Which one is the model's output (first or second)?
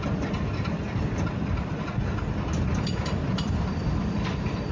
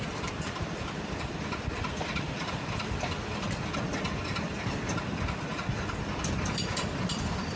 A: second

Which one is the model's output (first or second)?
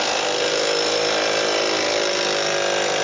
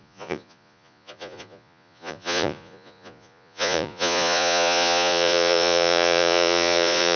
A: second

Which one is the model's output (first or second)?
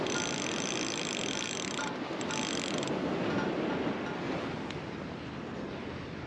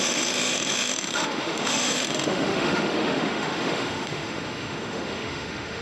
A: second